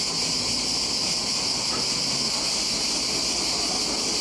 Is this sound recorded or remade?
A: recorded